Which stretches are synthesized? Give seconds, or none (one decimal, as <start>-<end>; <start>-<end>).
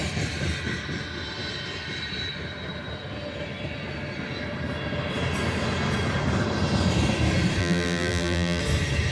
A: 7.6-8.6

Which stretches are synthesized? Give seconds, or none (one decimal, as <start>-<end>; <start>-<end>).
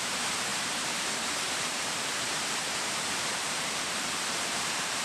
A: 0.0-5.0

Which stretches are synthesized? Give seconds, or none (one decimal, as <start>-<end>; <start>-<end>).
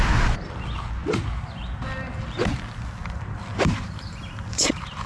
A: 3.5-5.1